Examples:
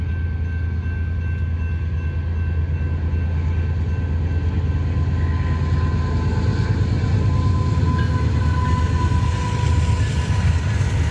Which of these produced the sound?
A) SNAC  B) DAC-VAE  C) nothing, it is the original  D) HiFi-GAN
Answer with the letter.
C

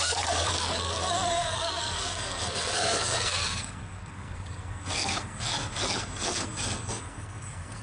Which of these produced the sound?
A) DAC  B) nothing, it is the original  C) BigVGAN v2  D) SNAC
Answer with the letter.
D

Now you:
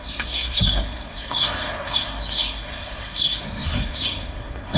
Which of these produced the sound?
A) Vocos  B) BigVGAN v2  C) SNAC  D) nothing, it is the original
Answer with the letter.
C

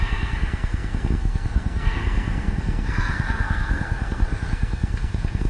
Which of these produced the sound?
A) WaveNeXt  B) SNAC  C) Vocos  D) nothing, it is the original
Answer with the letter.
B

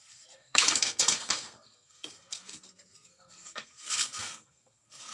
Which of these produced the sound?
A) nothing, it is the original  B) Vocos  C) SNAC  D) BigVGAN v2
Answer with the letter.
C